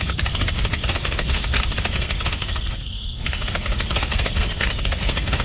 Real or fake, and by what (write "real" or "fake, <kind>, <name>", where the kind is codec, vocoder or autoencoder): fake, codec, SNAC